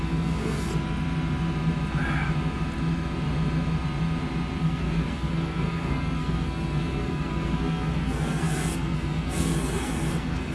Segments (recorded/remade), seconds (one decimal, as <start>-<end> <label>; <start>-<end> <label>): 0.0-0.7 remade; 0.7-4.6 recorded; 4.6-10.5 remade